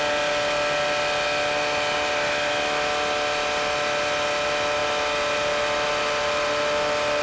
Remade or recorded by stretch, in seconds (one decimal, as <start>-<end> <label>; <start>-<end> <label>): 0.0-7.2 recorded